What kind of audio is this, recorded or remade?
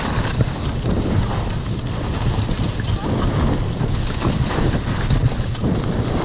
recorded